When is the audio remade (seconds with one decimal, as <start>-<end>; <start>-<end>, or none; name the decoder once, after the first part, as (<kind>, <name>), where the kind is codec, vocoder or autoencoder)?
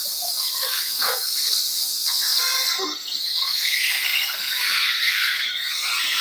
0.0-6.2 (codec, SNAC)